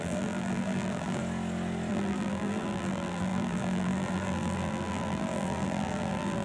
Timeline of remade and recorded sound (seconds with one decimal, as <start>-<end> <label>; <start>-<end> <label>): 0.0-1.2 remade; 1.2-1.9 recorded; 1.9-6.4 remade